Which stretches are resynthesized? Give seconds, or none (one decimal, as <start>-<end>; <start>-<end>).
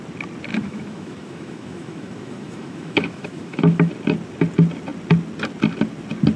0.5-3.9